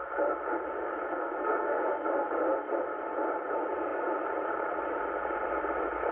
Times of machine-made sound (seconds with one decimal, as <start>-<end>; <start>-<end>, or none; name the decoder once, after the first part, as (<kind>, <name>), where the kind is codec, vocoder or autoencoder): 1.1-1.8 (codec, SNAC)